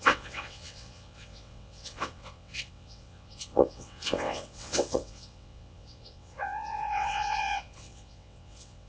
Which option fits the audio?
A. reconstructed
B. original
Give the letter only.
A